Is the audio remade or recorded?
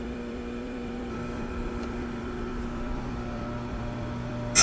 remade